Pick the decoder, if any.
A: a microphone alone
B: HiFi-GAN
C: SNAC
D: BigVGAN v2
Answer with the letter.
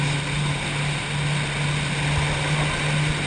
A